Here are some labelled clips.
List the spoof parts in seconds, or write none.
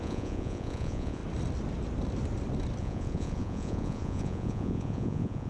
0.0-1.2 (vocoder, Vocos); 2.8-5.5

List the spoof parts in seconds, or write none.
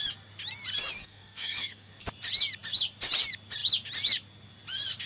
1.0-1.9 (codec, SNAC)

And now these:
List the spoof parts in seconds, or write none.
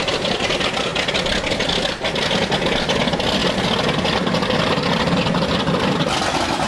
none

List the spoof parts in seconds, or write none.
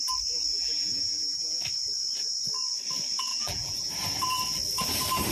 0.5-1.6 (vocoder, BigVGAN v2); 3.3-3.9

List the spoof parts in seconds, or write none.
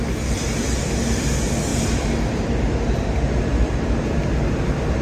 none